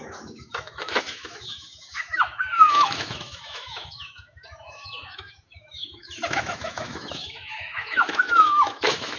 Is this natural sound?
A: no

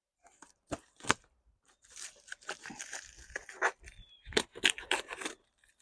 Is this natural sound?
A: no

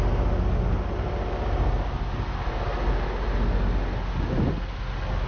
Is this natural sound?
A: yes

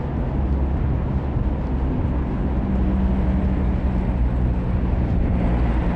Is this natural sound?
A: yes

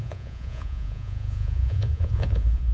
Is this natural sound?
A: no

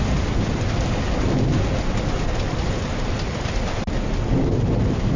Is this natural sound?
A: yes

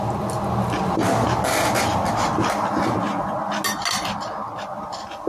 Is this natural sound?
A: yes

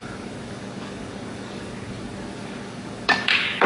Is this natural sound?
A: no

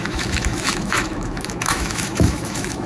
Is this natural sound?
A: no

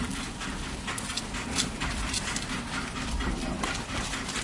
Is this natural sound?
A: yes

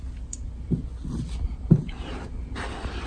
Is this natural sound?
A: yes